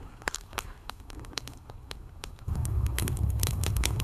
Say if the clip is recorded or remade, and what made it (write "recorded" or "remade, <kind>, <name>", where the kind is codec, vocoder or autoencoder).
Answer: remade, codec, SNAC